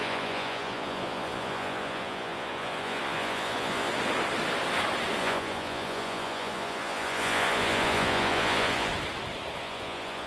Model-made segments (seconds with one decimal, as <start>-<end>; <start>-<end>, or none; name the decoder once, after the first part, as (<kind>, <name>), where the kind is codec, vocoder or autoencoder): 0.0-3.9 (vocoder, Vocos); 5.2-8.9; 9.6-10.3